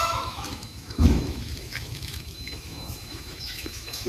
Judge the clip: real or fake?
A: fake